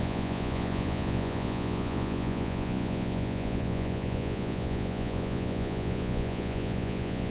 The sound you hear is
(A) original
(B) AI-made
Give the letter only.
B